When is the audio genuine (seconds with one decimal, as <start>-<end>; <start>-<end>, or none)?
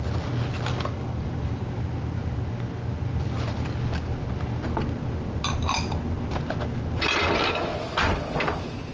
0.0-0.7; 1.6-8.9